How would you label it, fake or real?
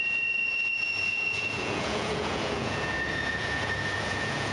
fake